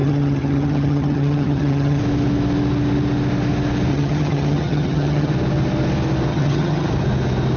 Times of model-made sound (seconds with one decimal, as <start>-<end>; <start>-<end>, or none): 0.0-2.0; 3.9-5.3; 6.3-6.9